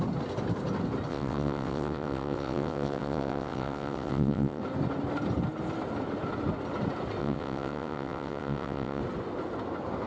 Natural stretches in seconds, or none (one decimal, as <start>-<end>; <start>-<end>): 0.0-1.1; 4.6-7.2; 9.0-10.1